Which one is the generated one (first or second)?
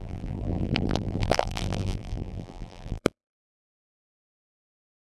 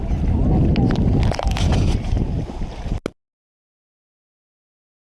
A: first